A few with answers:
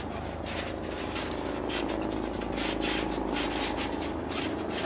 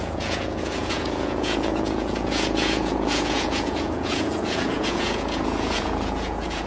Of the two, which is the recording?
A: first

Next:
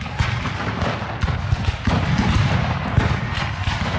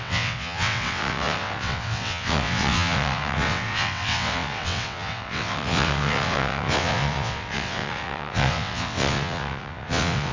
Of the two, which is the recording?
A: first